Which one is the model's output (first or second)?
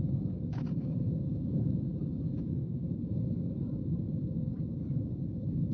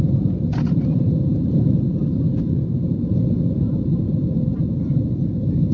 first